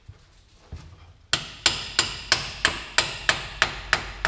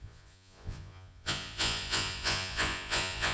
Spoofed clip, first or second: second